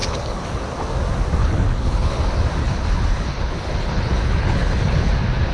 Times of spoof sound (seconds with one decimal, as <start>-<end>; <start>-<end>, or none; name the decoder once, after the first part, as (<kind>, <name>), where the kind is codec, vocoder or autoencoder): 0.0-0.6 (codec, HILCodec); 1.4-2.2; 2.6-5.1